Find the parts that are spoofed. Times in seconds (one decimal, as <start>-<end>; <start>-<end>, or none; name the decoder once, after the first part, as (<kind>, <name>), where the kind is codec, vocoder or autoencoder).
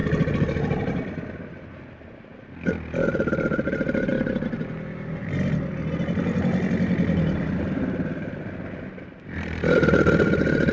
none